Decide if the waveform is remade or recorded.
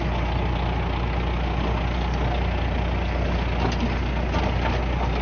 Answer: recorded